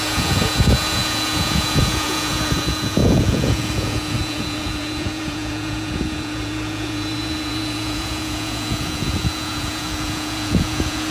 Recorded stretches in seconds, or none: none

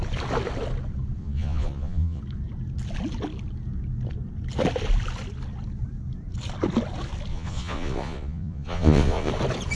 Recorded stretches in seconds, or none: 0.0-1.2; 2.2-7.3; 9.3-9.8

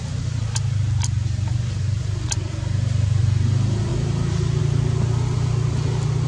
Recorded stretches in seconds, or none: 0.0-6.3

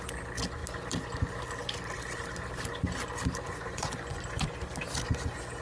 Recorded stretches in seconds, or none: 0.0-3.5; 4.2-5.6

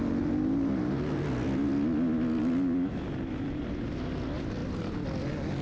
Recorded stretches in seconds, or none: 0.0-5.6

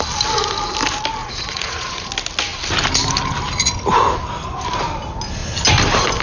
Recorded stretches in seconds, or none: 0.0-1.2; 2.1-6.2